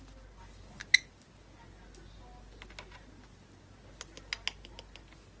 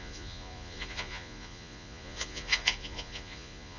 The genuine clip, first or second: first